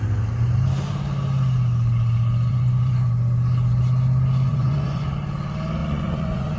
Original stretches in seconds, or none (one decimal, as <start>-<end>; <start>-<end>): 0.0-2.5; 3.1-4.5; 5.1-5.8